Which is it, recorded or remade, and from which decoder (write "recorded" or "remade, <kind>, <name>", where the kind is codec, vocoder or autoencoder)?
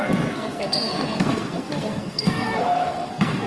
remade, codec, SNAC